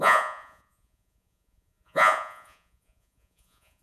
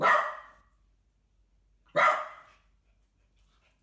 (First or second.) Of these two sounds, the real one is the second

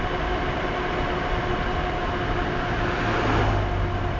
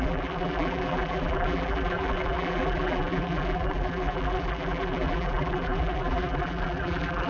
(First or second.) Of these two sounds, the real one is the first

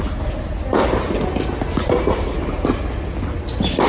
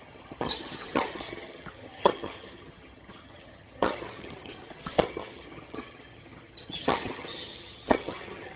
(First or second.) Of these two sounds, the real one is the first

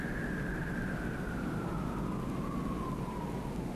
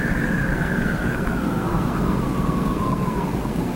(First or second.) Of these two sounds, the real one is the first